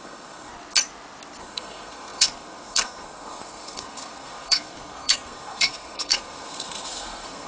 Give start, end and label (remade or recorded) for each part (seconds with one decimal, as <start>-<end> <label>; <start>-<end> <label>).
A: 0.0-0.5 remade; 0.5-1.4 recorded; 1.4-7.5 remade